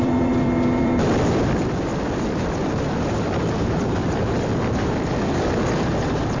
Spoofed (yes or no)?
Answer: yes